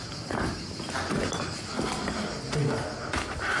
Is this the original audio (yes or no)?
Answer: yes